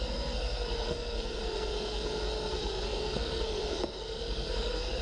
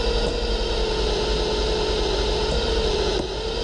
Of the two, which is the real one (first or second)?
second